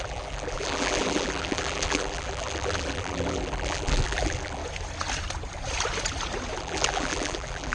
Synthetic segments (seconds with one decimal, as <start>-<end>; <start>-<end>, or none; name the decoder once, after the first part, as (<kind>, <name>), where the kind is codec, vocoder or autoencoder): 0.0-4.6 (vocoder, BigVGAN v2); 6.6-7.7